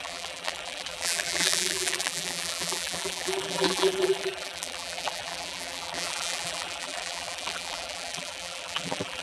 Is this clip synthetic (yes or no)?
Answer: yes